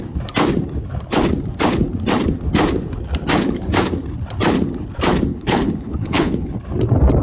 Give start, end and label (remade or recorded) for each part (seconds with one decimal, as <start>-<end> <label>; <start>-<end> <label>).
0.0-5.3 recorded; 5.3-6.6 remade; 6.6-7.2 recorded